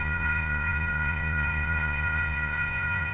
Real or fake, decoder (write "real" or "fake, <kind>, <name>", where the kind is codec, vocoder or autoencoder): fake, vocoder, Vocos